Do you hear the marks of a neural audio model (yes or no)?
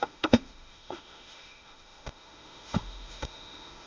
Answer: yes